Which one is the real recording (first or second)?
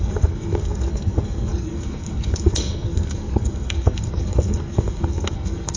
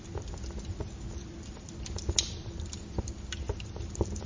second